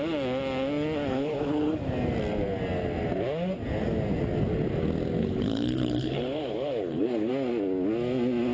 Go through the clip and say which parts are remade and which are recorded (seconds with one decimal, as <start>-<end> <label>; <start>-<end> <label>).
0.0-1.1 recorded; 1.1-1.8 remade; 1.8-5.2 recorded; 5.2-7.3 remade; 7.3-8.5 recorded